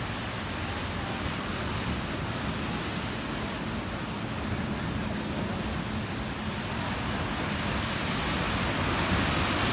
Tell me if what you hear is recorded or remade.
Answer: recorded